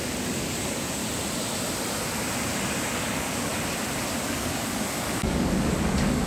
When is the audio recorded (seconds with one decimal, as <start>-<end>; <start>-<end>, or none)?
1.0-2.9; 3.5-4.2